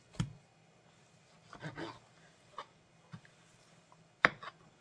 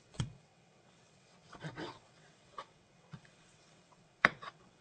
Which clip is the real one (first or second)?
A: first